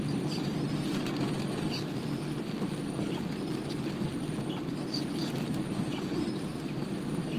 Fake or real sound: real